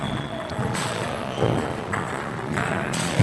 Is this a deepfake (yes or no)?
yes